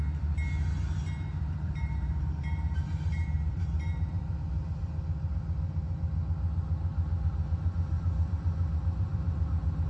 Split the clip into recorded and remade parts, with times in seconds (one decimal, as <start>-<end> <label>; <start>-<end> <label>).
0.0-1.3 recorded; 1.3-5.3 remade; 5.3-6.9 recorded; 6.9-9.5 remade; 9.5-9.9 recorded